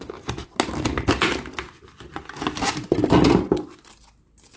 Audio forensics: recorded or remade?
recorded